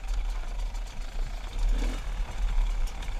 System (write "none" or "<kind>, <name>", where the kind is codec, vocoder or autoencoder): none